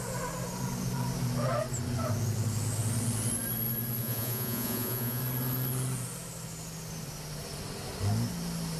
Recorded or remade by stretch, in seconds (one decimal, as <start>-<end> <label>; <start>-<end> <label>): 0.0-4.0 recorded; 4.0-5.2 remade; 5.2-8.8 recorded